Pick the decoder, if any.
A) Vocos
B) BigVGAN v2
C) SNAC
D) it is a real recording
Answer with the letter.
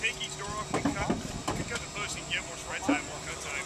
D